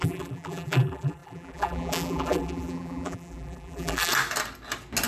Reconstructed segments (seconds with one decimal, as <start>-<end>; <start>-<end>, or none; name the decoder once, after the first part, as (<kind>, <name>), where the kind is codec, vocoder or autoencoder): 0.0-4.1 (vocoder, BigVGAN v2)